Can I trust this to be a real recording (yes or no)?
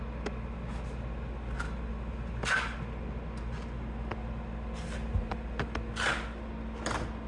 yes